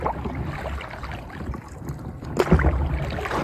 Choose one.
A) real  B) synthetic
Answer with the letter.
A